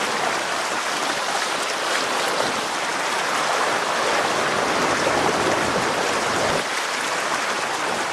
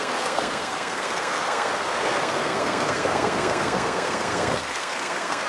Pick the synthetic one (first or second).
second